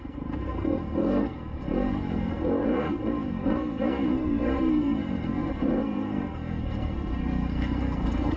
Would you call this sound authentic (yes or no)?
no